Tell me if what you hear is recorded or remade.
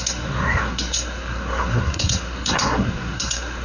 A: remade